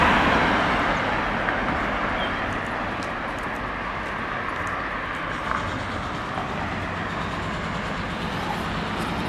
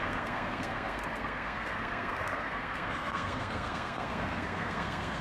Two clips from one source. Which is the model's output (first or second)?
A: second